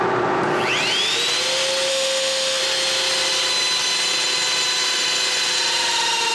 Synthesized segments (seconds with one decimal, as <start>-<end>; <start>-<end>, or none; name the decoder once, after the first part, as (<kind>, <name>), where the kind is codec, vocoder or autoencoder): 1.9-2.6 (autoencoder, DAC-VAE)